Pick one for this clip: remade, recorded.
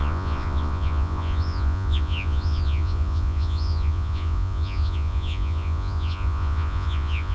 remade